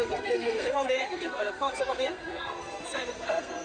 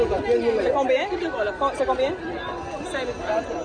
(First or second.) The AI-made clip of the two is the first